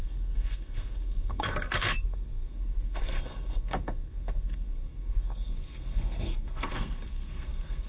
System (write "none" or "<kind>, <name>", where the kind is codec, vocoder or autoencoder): codec, SNAC